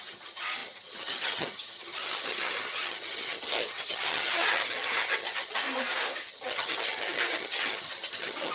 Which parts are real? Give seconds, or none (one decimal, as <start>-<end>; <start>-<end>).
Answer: 5.6-6.3